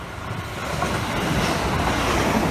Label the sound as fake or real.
real